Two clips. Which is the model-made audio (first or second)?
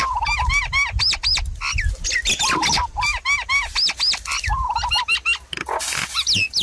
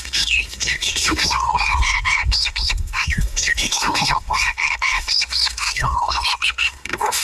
second